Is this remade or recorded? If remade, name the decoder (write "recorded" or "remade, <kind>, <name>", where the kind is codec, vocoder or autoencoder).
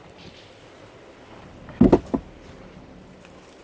recorded